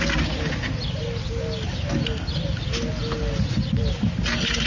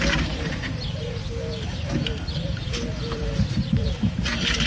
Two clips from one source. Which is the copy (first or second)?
second